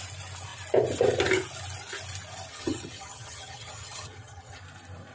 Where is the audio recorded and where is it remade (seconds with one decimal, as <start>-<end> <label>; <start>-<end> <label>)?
0.0-2.5 recorded; 2.5-4.6 remade; 4.6-5.1 recorded

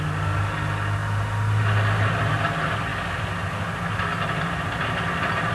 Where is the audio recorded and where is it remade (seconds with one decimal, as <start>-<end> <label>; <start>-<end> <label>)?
0.0-5.5 recorded

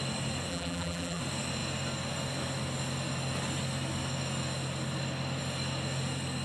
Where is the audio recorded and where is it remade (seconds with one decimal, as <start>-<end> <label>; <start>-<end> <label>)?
0.0-0.5 recorded; 0.5-1.2 remade; 1.2-6.4 recorded

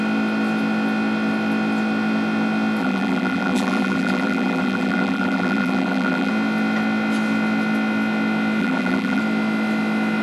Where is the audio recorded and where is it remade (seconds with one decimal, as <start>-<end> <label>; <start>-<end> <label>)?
0.0-2.8 recorded; 2.8-6.3 remade; 6.3-8.6 recorded; 8.6-9.2 remade; 9.2-10.2 recorded